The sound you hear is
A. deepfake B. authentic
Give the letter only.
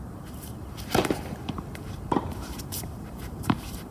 A